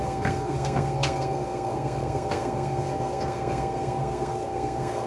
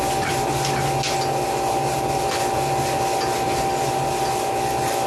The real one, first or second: second